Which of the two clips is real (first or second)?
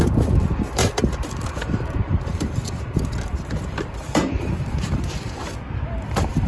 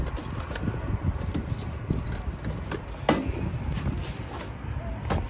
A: second